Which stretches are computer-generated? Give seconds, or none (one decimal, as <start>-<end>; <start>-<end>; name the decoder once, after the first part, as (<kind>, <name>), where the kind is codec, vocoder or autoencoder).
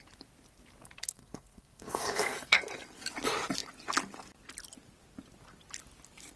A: 1.0-2.6 (codec, SNAC)